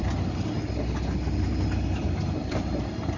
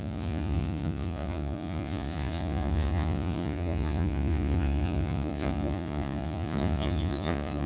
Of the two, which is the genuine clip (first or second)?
first